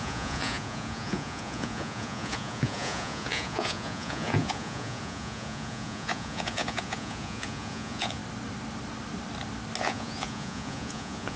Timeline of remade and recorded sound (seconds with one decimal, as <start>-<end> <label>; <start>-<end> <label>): 0.0-8.2 remade; 8.2-9.8 recorded; 9.8-11.4 remade

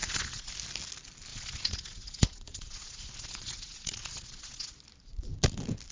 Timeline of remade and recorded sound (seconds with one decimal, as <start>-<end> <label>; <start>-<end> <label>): 0.0-0.5 remade; 0.5-1.3 recorded; 1.3-4.8 remade; 4.8-5.9 recorded

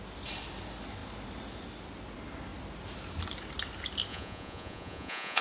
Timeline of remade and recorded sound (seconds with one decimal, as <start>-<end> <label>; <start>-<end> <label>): 0.0-4.1 recorded; 4.1-5.4 remade

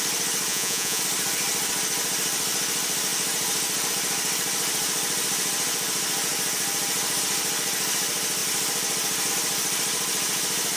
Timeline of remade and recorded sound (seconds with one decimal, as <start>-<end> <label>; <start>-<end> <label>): 0.0-0.5 recorded; 0.5-1.0 remade; 1.0-10.8 recorded

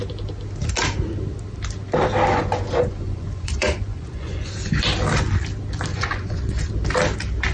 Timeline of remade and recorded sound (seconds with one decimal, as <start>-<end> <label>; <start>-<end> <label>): 0.0-2.3 recorded; 2.3-4.5 remade; 4.5-5.9 recorded; 5.9-6.7 remade; 6.7-7.5 recorded

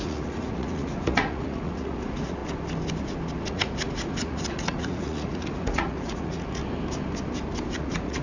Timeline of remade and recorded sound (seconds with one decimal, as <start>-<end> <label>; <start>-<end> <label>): 0.0-2.4 remade; 2.4-3.5 recorded; 3.5-6.6 remade; 6.6-7.7 recorded; 7.7-8.2 remade

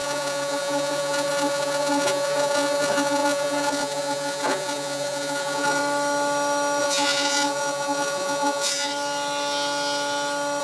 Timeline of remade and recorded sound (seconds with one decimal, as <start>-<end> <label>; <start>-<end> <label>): 0.0-5.8 remade; 5.8-6.8 recorded; 6.8-8.9 remade; 8.9-10.6 recorded